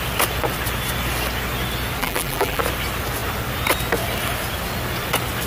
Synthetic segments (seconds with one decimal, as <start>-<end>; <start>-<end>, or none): 2.0-2.6